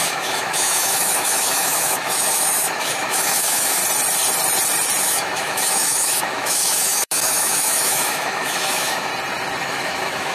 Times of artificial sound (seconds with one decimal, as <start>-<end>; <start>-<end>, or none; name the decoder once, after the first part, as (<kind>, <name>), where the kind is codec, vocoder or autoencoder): 0.0-3.8 (autoencoder, DAC-VAE); 5.0-9.1; 9.6-10.3